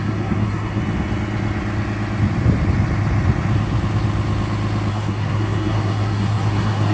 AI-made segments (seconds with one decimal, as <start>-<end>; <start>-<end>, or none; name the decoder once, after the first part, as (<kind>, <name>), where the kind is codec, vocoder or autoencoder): 0.0-0.8 (codec, SNAC); 4.9-6.9

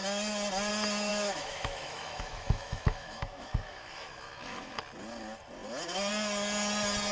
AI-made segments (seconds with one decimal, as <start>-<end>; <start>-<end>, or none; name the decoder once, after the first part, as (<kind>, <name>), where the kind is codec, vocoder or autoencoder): 1.1-4.8 (autoencoder, DAC-VAE)

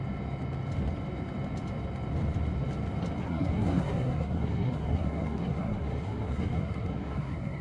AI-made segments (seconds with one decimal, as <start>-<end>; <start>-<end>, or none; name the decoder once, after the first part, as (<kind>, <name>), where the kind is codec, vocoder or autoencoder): 3.2-7.6 (codec, SNAC)

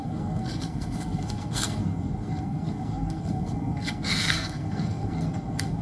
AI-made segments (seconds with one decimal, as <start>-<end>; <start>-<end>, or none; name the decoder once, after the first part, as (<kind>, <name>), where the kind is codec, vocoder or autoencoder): 0.0-5.8 (codec, SNAC)

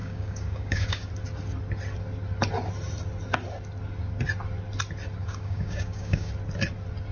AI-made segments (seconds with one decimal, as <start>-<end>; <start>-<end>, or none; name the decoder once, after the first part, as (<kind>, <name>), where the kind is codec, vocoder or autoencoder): 0.0-1.1 (codec, DAC); 5.2-6.3